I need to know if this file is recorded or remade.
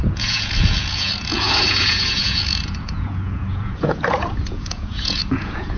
remade